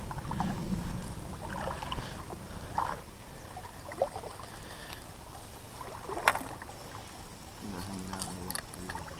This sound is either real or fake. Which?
fake